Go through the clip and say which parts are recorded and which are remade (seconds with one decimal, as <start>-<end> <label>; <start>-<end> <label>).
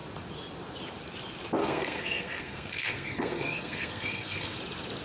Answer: 0.0-1.6 recorded; 1.6-4.6 remade; 4.6-5.0 recorded